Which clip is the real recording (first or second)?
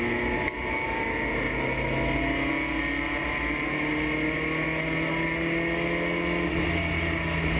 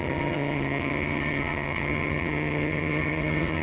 first